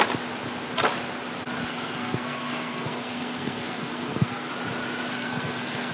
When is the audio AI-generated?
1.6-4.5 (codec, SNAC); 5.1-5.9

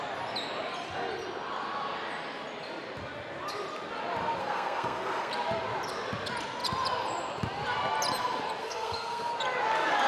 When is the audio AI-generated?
4.4-5.3 (codec, SNAC); 8.6-9.3

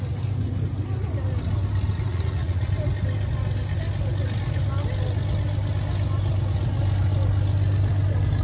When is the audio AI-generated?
2.1-2.7 (vocoder, Vocos)

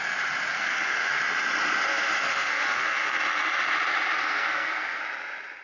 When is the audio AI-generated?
0.5-1.2 (codec, SNAC); 1.9-3.2; 4.2-5.0

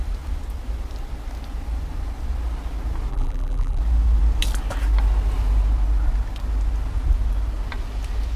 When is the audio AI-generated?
3.1-3.8 (vocoder, BigVGAN v2)

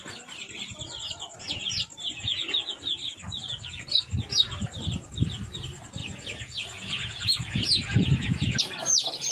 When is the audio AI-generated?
6.0-8.6 (vocoder, Vocos)

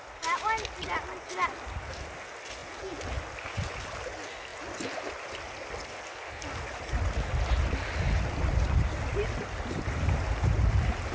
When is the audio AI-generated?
none